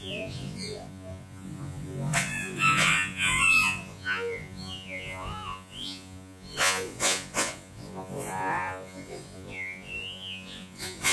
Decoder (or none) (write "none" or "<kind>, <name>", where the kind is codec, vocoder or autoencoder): vocoder, Vocos